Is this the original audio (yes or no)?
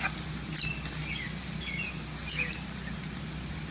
yes